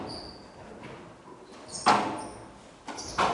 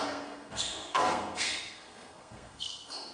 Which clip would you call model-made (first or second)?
second